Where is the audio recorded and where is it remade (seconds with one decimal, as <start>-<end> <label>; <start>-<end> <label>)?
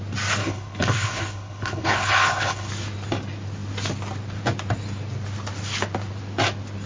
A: 0.0-0.4 recorded; 0.4-2.7 remade; 2.7-6.9 recorded